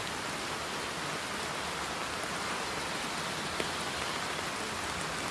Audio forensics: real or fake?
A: real